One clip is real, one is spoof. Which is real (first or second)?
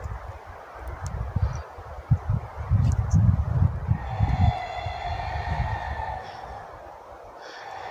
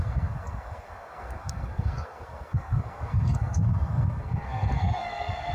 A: first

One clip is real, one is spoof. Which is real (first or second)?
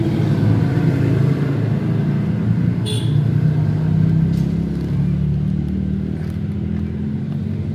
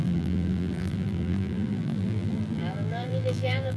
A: first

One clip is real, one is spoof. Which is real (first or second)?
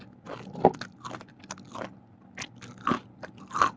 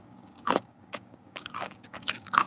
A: first